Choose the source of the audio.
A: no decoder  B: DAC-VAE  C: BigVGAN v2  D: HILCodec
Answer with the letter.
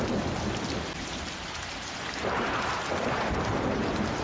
A